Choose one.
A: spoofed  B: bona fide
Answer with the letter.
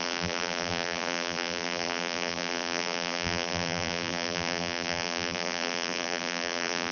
A